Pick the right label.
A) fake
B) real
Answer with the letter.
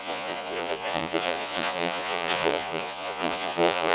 A